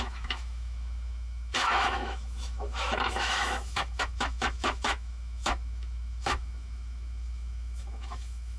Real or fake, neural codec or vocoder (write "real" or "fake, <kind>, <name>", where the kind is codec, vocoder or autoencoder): fake, autoencoder, DAC-VAE